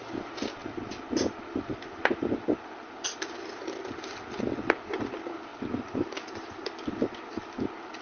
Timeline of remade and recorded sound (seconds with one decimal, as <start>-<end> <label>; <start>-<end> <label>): 0.0-8.0 recorded